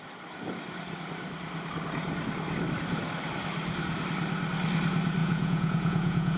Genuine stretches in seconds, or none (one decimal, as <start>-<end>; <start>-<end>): 0.0-5.2